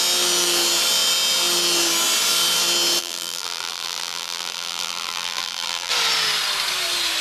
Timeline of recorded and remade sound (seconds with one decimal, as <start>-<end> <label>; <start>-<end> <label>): 0.0-3.0 recorded; 3.0-5.9 remade; 5.9-7.2 recorded